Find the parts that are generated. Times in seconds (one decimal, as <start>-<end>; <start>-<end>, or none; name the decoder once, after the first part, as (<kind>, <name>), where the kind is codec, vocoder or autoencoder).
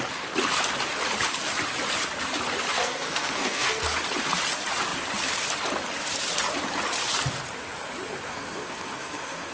2.7-3.8 (codec, SNAC); 8.3-9.5